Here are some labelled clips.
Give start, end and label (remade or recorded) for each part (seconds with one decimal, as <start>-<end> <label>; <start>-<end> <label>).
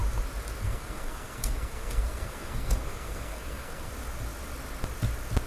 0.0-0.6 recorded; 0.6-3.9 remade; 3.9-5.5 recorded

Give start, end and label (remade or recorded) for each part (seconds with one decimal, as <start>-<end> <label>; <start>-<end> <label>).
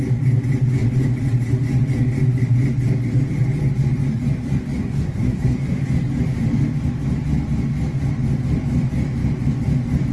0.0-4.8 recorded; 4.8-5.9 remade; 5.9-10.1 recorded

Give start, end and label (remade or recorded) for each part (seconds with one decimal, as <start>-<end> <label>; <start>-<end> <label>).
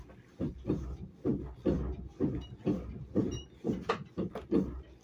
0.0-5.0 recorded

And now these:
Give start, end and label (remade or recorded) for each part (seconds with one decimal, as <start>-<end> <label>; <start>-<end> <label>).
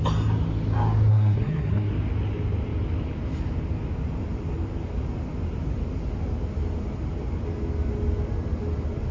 0.0-1.1 recorded; 1.1-1.9 remade; 1.9-9.1 recorded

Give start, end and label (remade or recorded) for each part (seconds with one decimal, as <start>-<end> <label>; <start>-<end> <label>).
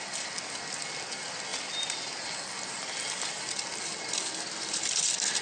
0.0-5.4 recorded